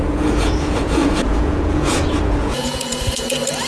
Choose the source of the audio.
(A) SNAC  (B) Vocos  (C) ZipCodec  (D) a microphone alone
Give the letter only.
B